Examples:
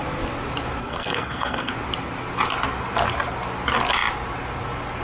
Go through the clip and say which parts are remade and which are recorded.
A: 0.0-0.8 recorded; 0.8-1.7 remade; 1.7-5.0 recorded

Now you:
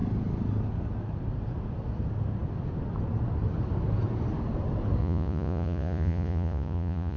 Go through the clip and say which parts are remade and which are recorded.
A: 0.0-5.0 recorded; 5.0-7.2 remade

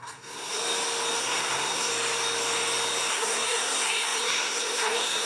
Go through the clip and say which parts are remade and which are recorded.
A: 0.0-0.6 remade; 0.6-1.2 recorded; 1.2-1.9 remade; 1.9-3.1 recorded; 3.1-5.3 remade

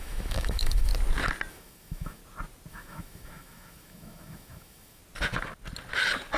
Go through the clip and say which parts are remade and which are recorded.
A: 0.0-0.9 remade; 0.9-1.5 recorded; 1.5-2.2 remade; 2.2-2.7 recorded; 2.7-5.0 remade; 5.0-6.4 recorded

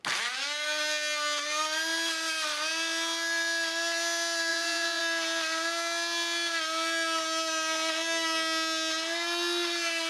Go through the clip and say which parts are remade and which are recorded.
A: 0.0-4.5 recorded; 4.5-5.0 remade; 5.0-10.1 recorded

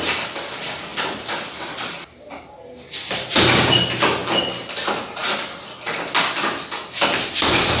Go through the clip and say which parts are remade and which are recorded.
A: 0.0-0.9 recorded; 0.9-3.3 remade; 3.3-5.2 recorded; 5.2-6.3 remade; 6.3-7.8 recorded

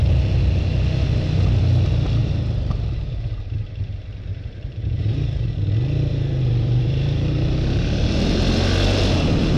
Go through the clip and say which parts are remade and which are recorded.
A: 0.0-2.2 recorded; 2.2-2.8 remade; 2.8-4.3 recorded; 4.3-5.6 remade; 5.6-6.1 recorded; 6.1-8.3 remade; 8.3-9.6 recorded

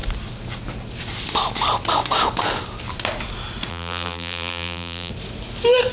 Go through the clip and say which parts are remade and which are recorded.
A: 0.0-3.7 recorded; 3.7-5.1 remade; 5.1-5.9 recorded